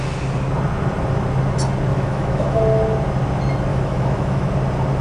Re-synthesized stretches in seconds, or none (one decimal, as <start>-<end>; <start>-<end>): 1.9-2.6; 3.7-4.5